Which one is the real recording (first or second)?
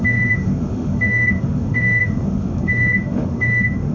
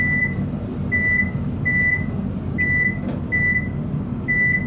second